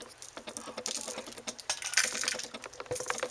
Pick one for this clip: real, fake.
real